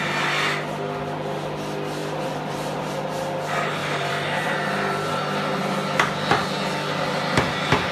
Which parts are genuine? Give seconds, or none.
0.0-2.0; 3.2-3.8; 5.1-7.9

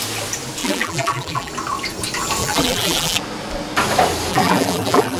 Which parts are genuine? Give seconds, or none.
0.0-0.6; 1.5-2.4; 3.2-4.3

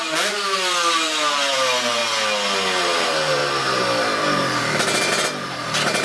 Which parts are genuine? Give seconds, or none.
2.0-2.8; 3.4-6.0

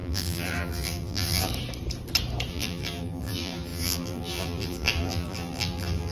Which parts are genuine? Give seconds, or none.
1.5-2.5